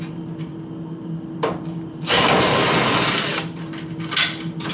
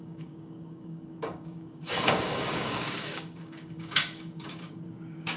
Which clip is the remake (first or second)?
second